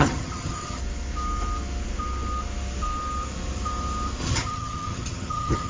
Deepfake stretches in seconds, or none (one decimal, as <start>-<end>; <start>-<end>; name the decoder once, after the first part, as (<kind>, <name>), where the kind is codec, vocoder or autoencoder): 0.0-0.8 (vocoder, HiFi-GAN); 4.2-5.7